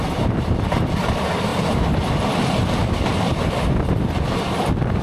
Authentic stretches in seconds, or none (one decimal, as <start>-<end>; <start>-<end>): 0.0-5.0